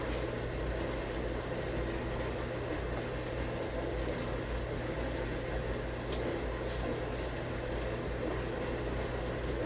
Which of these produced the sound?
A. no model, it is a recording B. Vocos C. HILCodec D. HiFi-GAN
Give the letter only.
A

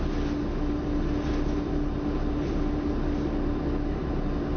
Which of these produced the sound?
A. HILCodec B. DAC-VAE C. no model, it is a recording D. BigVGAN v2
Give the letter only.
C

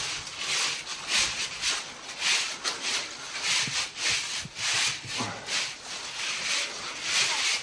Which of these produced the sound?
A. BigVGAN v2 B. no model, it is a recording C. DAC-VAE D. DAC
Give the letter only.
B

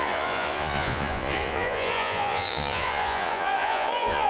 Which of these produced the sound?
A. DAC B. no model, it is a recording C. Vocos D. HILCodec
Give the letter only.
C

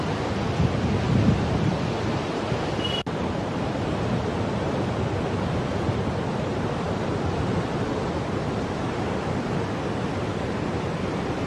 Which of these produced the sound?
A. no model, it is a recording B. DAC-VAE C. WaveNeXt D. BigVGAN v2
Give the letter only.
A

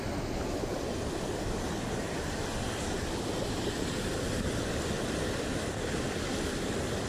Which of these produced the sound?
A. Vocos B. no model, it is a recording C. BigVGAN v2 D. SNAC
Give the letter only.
B